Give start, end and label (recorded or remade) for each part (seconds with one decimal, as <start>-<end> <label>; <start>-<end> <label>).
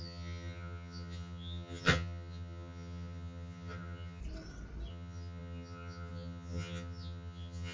0.0-4.2 remade; 4.2-4.9 recorded; 4.9-7.7 remade